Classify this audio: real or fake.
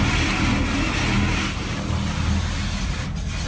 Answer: real